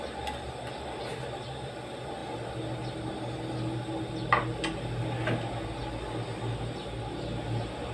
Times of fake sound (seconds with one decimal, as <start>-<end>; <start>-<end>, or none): none